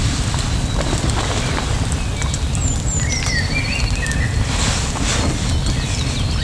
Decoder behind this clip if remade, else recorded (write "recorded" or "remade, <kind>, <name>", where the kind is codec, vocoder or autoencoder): recorded